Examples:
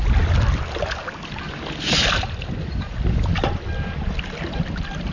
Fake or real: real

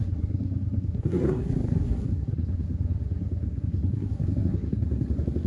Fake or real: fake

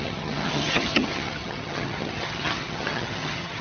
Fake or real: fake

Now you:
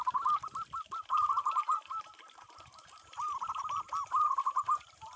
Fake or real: fake